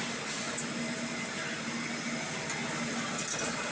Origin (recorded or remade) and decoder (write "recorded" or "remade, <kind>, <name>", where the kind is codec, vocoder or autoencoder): recorded